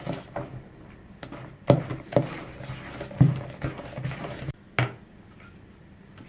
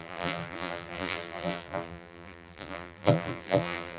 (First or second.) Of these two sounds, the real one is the first